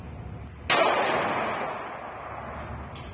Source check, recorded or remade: recorded